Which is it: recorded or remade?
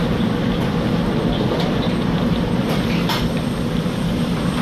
remade